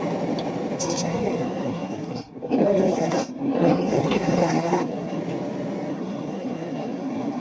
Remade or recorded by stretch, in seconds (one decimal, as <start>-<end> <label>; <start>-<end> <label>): 0.0-0.8 recorded; 0.8-5.2 remade; 5.2-5.9 recorded; 5.9-7.4 remade